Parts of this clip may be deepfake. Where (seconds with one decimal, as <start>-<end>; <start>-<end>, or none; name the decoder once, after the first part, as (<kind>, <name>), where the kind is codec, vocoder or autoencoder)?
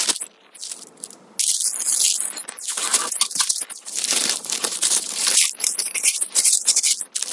2.4-6.8 (vocoder, BigVGAN v2)